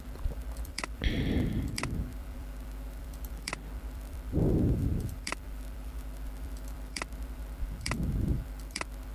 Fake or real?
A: fake